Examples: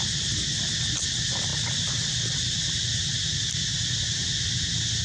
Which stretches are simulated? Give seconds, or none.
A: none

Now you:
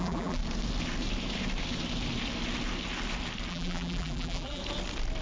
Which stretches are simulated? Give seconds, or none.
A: 0.0-0.4 (vocoder, BigVGAN v2); 3.5-4.6

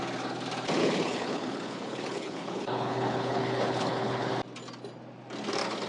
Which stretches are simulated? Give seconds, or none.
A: 0.8-4.3 (codec, HILCodec)

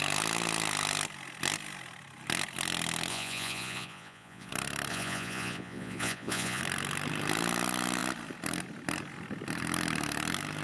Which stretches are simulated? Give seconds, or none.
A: 3.1-4.5 (vocoder, Vocos); 4.9-6.6

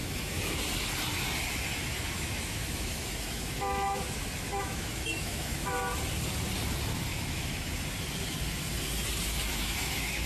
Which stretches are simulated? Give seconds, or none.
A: 0.0-0.6 (autoencoder, DAC-VAE); 1.7-5.7; 7.1-7.7; 9.5-10.3

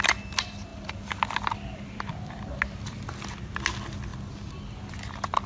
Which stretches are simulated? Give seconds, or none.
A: none

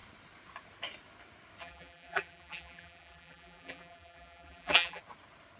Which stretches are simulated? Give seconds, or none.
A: 1.6-5.0 (vocoder, BigVGAN v2)

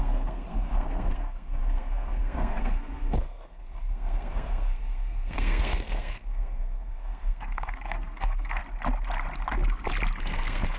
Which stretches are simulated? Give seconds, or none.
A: 0.0-8.6 (codec, SNAC); 10.2-10.8